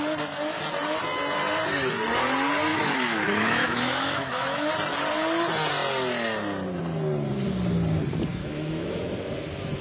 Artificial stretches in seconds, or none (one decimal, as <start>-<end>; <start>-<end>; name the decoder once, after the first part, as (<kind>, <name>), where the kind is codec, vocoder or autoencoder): 2.7-4.7 (autoencoder, DAC-VAE); 8.3-9.0